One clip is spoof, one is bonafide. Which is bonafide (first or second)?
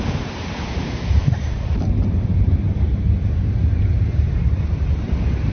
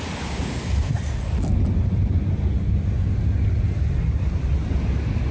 second